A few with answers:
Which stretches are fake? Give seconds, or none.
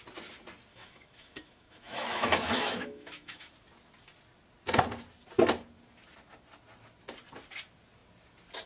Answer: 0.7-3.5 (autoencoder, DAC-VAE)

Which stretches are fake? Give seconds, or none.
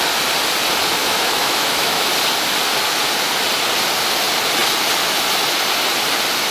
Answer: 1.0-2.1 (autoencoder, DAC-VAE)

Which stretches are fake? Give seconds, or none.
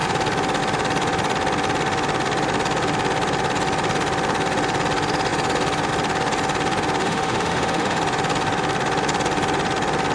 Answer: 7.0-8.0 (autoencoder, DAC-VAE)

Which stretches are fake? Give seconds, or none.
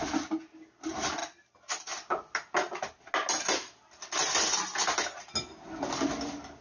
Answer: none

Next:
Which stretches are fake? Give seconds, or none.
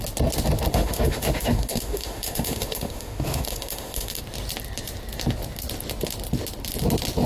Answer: 0.7-4.2 (autoencoder, DAC-VAE)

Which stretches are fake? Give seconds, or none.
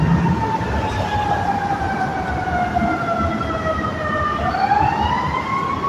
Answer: none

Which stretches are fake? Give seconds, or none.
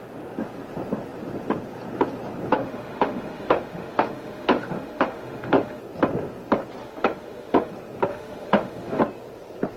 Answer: 2.5-5.8 (autoencoder, DAC-VAE); 6.8-7.7; 8.1-9.0